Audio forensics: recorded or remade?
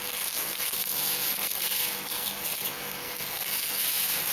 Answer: remade